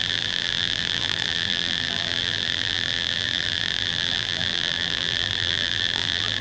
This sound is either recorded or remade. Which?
remade